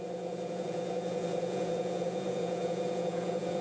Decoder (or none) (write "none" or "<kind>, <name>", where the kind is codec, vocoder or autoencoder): vocoder, Vocos